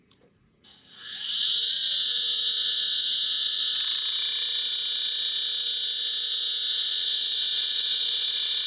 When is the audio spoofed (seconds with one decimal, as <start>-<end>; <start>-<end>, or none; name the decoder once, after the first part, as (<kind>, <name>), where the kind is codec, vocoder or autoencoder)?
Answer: 0.0-4.0 (vocoder, Vocos); 6.7-8.7